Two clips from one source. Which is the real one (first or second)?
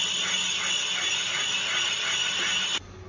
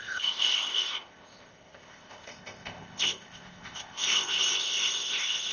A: first